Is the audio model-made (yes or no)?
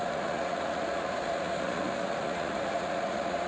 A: yes